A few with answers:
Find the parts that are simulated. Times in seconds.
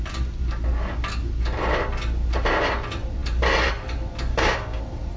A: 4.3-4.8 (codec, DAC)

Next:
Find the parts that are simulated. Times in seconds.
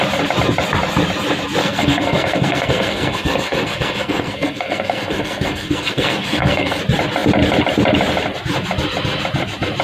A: 1.6-6.8 (codec, SNAC)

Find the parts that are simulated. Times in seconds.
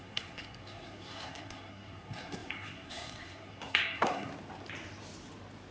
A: 0.0-4.3 (codec, SNAC)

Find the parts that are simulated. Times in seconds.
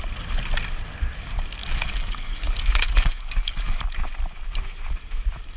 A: 1.6-3.8 (codec, DAC)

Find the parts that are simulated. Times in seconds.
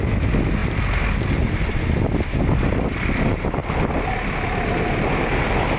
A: none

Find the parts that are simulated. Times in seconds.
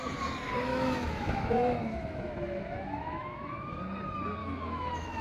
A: 0.7-3.8 (autoencoder, DAC-VAE); 4.4-5.2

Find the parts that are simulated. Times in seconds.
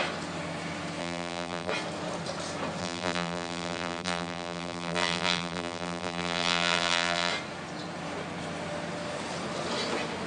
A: 1.0-1.7 (vocoder, BigVGAN v2); 2.8-7.3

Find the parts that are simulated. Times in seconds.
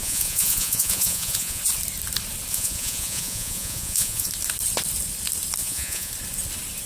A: 0.0-1.6 (vocoder, Vocos); 2.5-4.3; 5.6-6.1